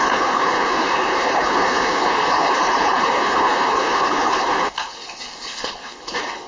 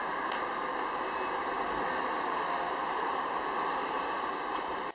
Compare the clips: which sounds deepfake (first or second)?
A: first